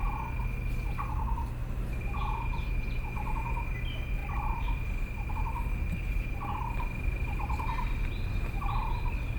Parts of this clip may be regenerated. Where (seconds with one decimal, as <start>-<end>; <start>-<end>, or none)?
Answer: 4.2-5.3